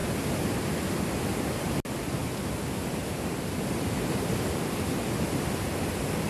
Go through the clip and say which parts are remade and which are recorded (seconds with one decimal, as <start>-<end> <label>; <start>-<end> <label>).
0.0-2.2 recorded; 2.2-4.7 remade; 4.7-6.3 recorded